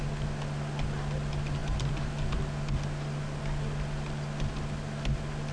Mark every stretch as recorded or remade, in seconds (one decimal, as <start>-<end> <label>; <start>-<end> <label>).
0.0-5.5 recorded